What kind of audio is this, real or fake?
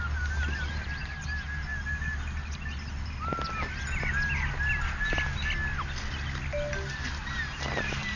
real